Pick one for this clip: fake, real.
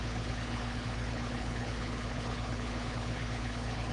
fake